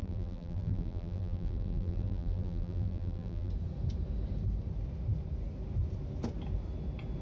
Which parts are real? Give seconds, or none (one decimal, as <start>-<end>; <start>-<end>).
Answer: 3.5-7.2